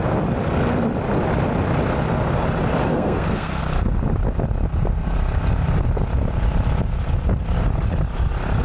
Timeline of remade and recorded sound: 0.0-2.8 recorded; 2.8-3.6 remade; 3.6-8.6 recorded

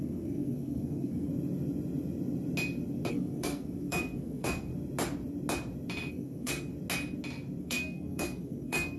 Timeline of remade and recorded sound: 0.0-1.3 remade; 1.3-3.1 recorded; 3.1-4.7 remade; 4.7-6.1 recorded; 6.1-6.7 remade; 6.7-7.6 recorded; 7.6-9.0 remade

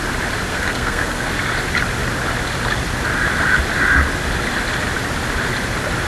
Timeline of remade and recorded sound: 0.0-0.5 recorded; 0.5-1.3 remade; 1.3-6.1 recorded

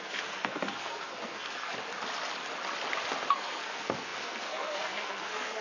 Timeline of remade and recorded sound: 0.0-1.7 remade; 1.7-3.3 recorded; 3.3-5.6 remade

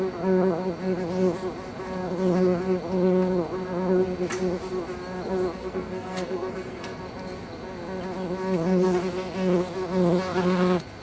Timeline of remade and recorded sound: 0.0-5.6 recorded; 5.6-7.0 remade; 7.0-11.0 recorded

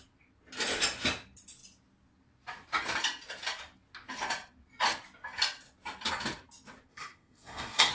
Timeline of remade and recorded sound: 0.0-6.9 recorded; 6.9-7.9 remade

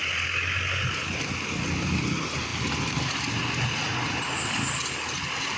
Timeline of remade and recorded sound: 0.0-5.6 recorded

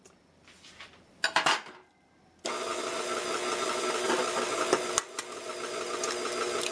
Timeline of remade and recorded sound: 0.0-6.7 recorded